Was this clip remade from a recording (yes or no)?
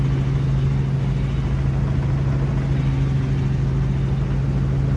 no